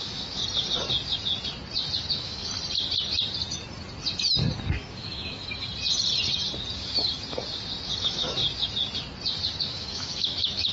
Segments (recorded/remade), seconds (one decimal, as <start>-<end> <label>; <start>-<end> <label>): 0.0-0.4 remade; 0.4-2.1 recorded; 2.1-2.5 remade; 2.5-4.6 recorded; 4.6-5.4 remade; 5.4-8.0 recorded; 8.0-8.4 remade; 8.4-9.6 recorded; 9.6-10.7 remade